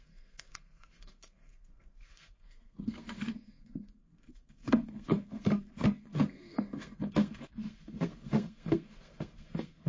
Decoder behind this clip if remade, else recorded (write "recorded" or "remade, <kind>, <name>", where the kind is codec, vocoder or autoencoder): remade, codec, SNAC